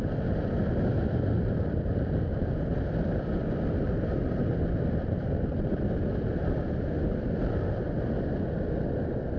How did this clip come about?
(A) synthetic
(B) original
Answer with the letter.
B